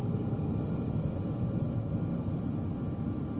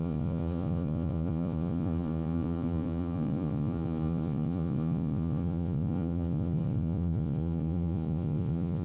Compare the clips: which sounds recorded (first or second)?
first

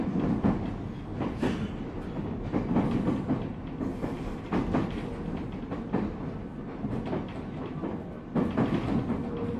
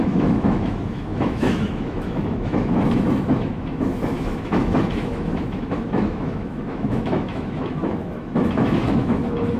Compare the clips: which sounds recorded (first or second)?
first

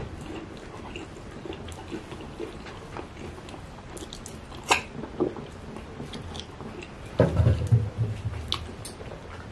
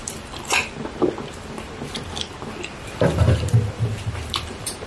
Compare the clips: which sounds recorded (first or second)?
first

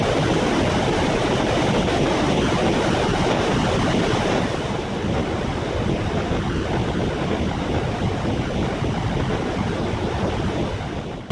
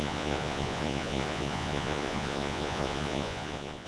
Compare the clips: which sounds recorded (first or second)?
first